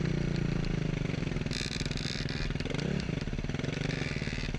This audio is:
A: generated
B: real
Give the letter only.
B